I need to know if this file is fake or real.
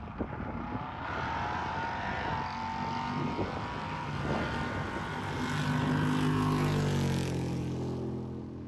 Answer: real